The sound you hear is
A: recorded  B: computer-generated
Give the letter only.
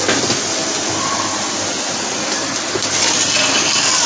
A